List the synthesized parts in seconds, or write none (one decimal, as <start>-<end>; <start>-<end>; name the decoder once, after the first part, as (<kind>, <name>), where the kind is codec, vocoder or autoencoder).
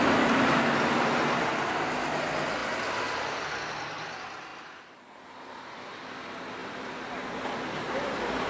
none